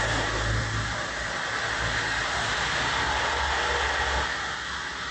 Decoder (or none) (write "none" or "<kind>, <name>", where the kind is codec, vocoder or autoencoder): none